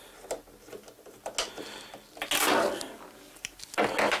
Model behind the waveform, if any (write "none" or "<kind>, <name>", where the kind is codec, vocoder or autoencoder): none